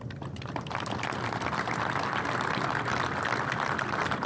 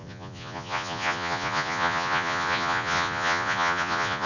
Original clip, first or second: first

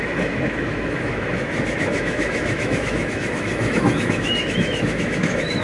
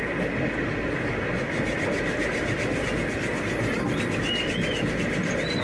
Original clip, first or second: second